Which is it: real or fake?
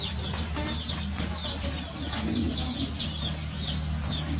real